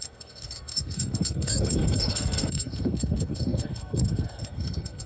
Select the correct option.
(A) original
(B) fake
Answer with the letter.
B